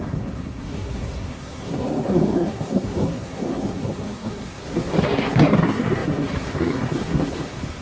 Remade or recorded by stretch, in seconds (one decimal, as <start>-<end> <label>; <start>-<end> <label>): 0.0-7.8 remade

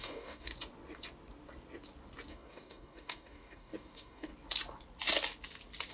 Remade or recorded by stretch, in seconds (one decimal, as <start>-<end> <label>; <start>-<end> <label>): 0.0-0.5 remade; 0.5-2.3 recorded; 2.3-4.3 remade; 4.3-5.9 recorded